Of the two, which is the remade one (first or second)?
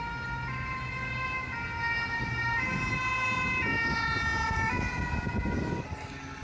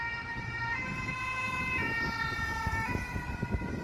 second